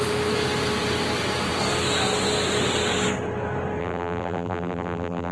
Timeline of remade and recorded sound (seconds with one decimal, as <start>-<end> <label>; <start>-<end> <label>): 0.0-3.8 recorded; 3.8-5.3 remade